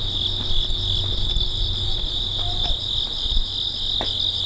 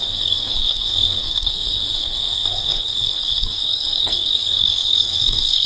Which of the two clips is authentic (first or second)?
first